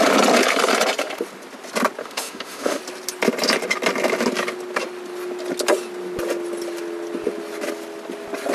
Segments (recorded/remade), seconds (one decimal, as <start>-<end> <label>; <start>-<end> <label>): 0.0-2.0 recorded; 2.0-2.8 remade; 2.8-8.5 recorded